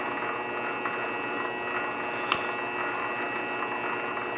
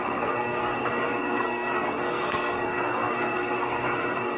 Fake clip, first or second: second